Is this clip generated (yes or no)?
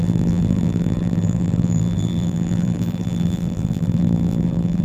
yes